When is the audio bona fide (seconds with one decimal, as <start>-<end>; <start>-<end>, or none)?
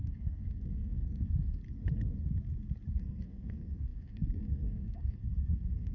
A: 1.6-2.9